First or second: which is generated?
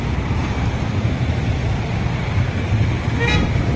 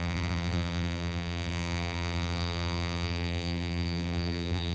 second